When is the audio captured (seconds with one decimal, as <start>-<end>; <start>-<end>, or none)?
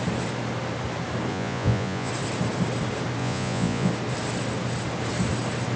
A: 0.0-1.3; 2.1-3.2; 3.9-5.8